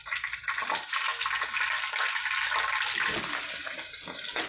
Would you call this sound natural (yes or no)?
yes